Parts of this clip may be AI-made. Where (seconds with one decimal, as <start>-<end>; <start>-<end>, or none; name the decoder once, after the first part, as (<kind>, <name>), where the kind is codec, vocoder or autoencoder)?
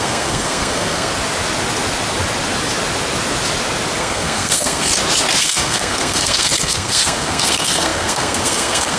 0.0-1.1 (codec, SNAC); 4.0-4.9; 5.4-9.0